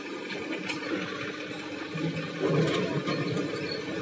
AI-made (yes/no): no